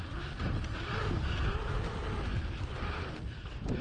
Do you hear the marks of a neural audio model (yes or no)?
no